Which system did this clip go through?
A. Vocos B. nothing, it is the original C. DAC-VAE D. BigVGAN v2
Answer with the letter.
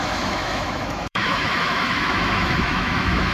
C